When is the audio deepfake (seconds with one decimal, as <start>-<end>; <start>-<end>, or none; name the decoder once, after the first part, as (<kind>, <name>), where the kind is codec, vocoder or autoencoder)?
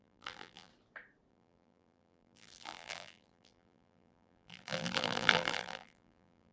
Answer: 0.0-0.7 (vocoder, BigVGAN v2); 1.3-6.5